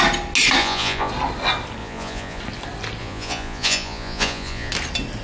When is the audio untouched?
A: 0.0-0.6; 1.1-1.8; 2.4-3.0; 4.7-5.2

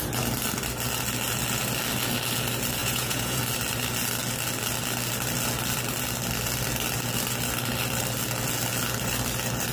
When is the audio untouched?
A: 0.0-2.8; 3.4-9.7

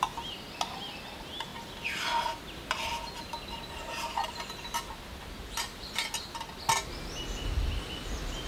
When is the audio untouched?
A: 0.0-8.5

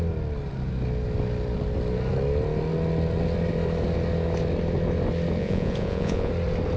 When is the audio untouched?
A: 0.0-5.4; 6.3-6.8